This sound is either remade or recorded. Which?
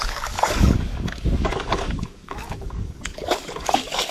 remade